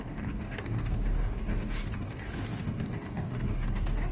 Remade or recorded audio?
remade